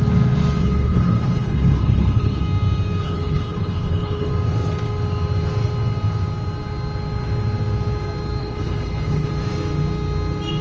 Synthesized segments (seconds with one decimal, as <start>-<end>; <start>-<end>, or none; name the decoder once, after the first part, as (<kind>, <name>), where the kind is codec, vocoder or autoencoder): 0.6-2.4 (codec, HILCodec); 3.0-4.3; 8.4-9.3